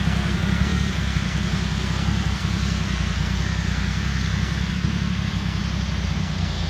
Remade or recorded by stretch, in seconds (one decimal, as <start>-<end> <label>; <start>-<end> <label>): 0.0-5.6 remade; 5.6-6.2 recorded; 6.2-6.7 remade